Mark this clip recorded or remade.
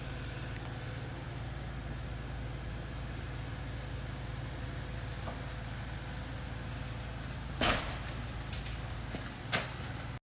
recorded